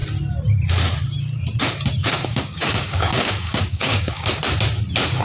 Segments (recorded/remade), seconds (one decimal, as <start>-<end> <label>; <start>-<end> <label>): 0.0-2.0 recorded; 2.0-4.4 remade; 4.4-5.2 recorded